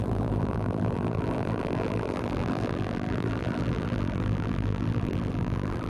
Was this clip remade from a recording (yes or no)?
yes